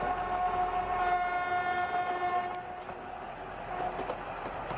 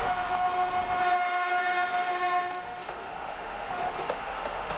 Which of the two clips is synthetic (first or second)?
second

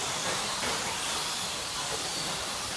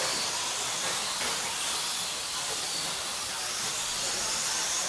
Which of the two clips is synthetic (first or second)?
first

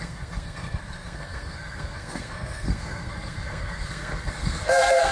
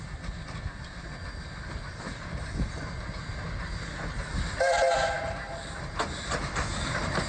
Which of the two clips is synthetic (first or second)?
first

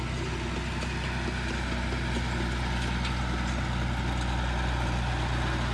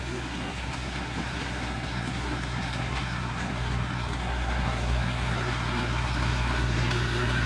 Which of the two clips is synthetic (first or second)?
second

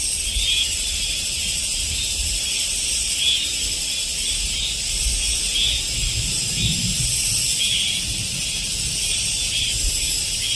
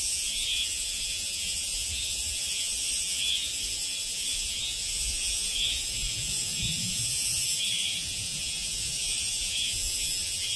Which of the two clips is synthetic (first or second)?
second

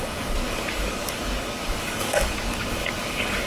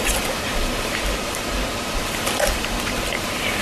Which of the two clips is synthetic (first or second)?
first